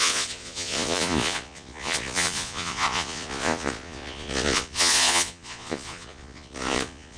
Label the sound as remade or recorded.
remade